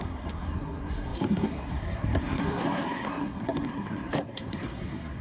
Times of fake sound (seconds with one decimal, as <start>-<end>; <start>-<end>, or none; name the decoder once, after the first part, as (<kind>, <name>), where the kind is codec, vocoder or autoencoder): 0.0-5.2 (codec, SNAC)